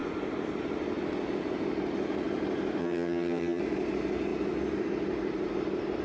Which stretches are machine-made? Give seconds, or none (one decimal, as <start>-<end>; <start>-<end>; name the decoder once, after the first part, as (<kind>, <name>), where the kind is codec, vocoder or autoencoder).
2.8-3.6 (vocoder, HiFi-GAN)